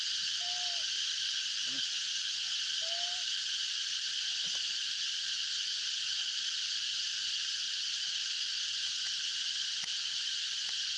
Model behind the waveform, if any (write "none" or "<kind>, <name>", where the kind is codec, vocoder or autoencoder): none